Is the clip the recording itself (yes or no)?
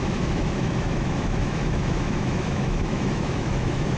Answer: no